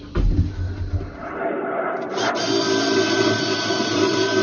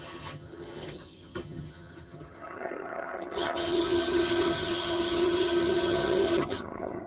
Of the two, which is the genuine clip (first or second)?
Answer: first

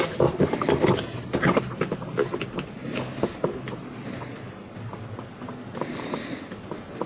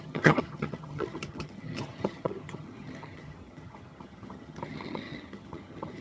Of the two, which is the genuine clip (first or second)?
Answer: first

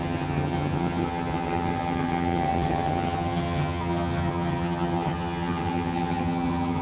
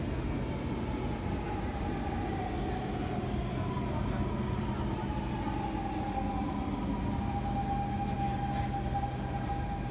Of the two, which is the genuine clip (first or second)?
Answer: second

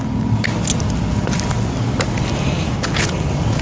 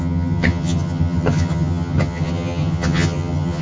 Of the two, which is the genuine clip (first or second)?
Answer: first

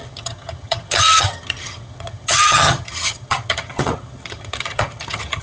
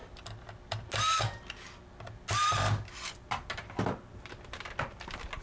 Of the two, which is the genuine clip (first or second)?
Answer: second